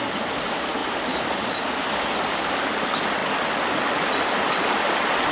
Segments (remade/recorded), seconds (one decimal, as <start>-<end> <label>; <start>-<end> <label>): 0.0-3.2 remade; 3.2-3.9 recorded; 3.9-5.3 remade

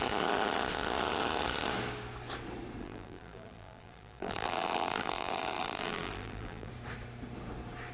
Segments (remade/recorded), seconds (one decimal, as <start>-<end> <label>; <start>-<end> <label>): 0.0-2.8 recorded; 2.8-6.7 remade; 6.7-7.9 recorded

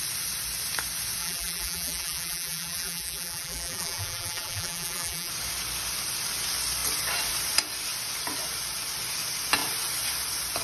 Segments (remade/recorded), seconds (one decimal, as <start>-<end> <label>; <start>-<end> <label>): 0.0-1.2 recorded; 1.2-5.3 remade; 5.3-10.6 recorded

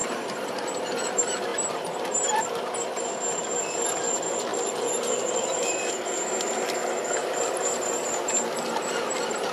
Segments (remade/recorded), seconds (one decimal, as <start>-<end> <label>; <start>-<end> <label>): 0.0-0.5 remade; 0.5-4.5 recorded; 4.5-5.9 remade; 5.9-6.8 recorded; 6.8-7.4 remade; 7.4-9.5 recorded

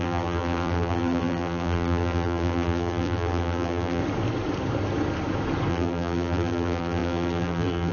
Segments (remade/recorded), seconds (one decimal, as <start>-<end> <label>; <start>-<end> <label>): 0.0-4.0 remade; 4.0-5.7 recorded; 5.7-7.9 remade